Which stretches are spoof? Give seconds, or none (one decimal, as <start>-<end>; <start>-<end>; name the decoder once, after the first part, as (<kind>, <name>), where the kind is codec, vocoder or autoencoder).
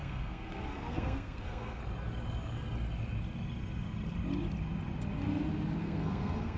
0.0-1.8 (codec, SNAC); 5.8-6.6